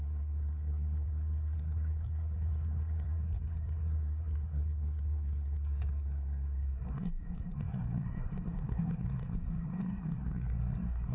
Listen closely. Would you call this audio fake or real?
fake